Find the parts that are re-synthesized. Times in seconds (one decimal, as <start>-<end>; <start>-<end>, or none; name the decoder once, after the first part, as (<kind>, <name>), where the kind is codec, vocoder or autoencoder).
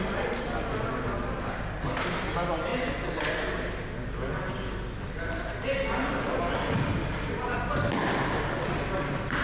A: none